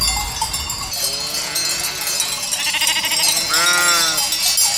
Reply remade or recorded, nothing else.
recorded